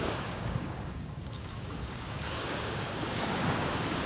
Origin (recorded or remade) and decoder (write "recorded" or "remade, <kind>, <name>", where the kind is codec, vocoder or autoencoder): remade, codec, DAC